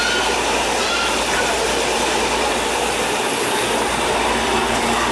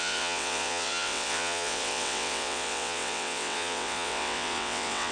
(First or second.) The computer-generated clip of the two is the second